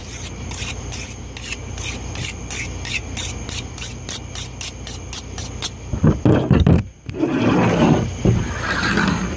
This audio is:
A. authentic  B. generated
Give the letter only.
A